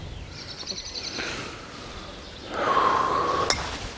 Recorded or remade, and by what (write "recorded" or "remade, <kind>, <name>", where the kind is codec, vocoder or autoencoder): recorded